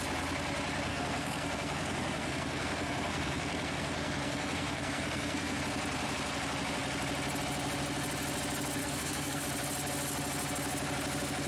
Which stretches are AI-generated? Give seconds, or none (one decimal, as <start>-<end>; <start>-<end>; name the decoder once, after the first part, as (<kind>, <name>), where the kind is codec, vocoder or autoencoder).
0.9-5.6 (codec, SNAC); 8.8-9.4